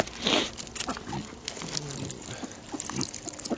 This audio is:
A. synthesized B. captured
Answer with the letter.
B